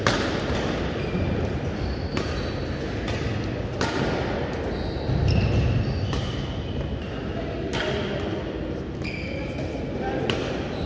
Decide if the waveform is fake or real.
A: real